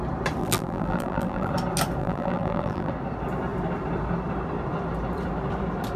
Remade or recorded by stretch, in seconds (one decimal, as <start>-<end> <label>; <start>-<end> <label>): 0.0-0.4 recorded; 0.4-1.5 remade; 1.5-2.0 recorded; 2.0-2.9 remade; 2.9-6.0 recorded

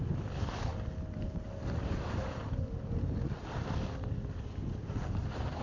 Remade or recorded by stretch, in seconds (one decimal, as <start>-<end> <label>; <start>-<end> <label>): 0.0-5.6 recorded

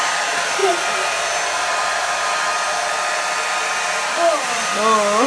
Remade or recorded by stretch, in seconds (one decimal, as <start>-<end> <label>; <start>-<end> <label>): 0.0-5.3 recorded

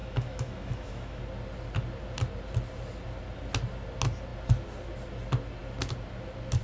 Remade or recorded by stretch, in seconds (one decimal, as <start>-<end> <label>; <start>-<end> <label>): 0.0-1.2 remade; 1.2-6.6 recorded

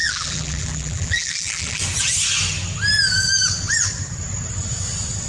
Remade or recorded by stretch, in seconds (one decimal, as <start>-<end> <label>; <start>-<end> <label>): 0.0-1.8 remade; 1.8-5.3 recorded

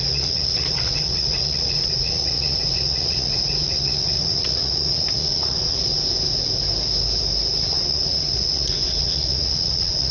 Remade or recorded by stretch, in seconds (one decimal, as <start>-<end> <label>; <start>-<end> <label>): 0.0-5.9 remade; 5.9-7.6 recorded; 7.6-10.1 remade

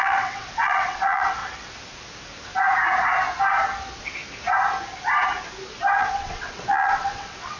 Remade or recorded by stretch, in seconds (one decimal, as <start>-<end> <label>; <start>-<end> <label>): 0.0-1.4 remade; 1.4-6.0 recorded; 6.0-7.6 remade

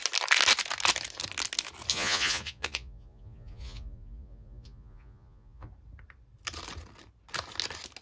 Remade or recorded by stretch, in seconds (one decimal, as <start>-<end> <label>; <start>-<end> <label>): 0.0-1.9 recorded; 1.9-5.7 remade; 5.7-8.0 recorded